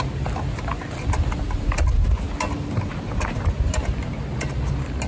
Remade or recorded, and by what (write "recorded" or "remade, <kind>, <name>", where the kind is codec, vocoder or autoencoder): recorded